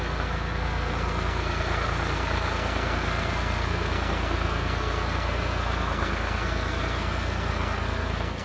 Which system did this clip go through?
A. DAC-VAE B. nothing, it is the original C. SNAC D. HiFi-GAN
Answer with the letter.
C